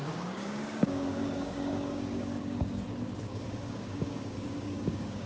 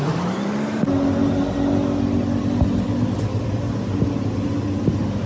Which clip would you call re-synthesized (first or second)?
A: first